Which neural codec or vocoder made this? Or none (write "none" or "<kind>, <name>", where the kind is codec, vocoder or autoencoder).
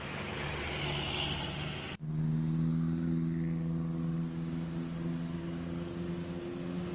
none